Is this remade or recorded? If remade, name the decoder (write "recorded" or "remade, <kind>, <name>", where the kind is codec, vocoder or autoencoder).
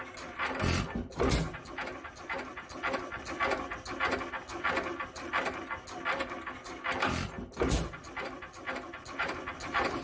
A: recorded